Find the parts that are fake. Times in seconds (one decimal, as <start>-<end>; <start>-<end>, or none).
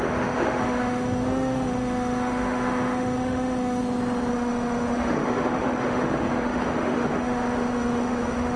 0.0-3.8; 4.3-8.6